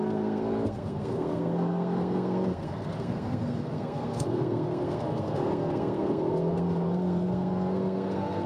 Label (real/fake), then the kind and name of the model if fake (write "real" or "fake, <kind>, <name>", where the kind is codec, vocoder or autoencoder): fake, codec, SNAC